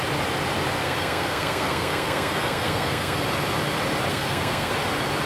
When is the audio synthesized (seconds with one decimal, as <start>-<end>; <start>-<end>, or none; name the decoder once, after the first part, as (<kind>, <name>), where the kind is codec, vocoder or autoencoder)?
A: 0.8-3.2 (codec, SNAC); 4.1-4.7